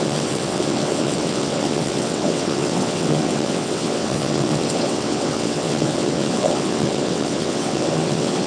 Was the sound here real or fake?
fake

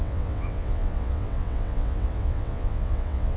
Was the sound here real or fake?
fake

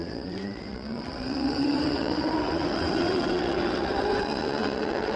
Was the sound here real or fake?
fake